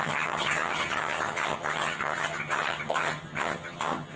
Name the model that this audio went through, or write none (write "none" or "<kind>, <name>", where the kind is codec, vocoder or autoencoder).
vocoder, HiFi-GAN